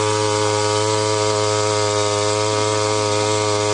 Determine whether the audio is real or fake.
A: real